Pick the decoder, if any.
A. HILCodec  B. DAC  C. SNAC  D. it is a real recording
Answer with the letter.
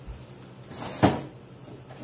D